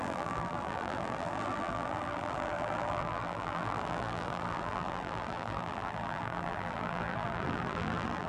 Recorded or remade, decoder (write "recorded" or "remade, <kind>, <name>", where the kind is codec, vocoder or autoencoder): remade, vocoder, BigVGAN v2